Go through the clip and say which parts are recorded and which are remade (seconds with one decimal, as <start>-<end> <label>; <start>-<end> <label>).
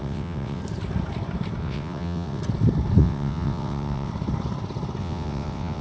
0.0-0.6 remade; 0.6-1.6 recorded; 1.6-2.4 remade; 2.4-3.0 recorded; 3.0-4.1 remade; 4.1-5.0 recorded; 5.0-5.8 remade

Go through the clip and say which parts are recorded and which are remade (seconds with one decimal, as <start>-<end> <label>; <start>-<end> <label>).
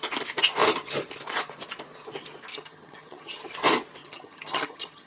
0.0-2.5 recorded; 2.5-3.4 remade; 3.4-4.0 recorded; 4.0-5.1 remade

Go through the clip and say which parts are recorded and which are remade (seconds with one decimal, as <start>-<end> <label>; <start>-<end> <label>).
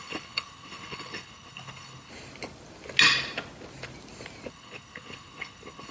0.0-2.1 remade; 2.1-4.5 recorded; 4.5-5.9 remade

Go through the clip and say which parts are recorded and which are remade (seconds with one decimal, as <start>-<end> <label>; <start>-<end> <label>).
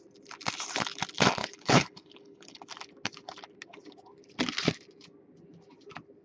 0.0-1.4 recorded; 1.4-2.6 remade; 2.6-6.2 recorded